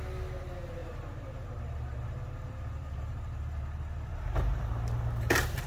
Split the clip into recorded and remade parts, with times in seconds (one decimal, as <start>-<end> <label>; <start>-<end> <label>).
0.0-0.8 recorded; 0.8-4.2 remade; 4.2-5.7 recorded